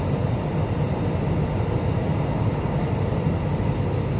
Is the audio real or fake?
real